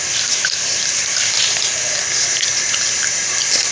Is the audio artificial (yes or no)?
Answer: no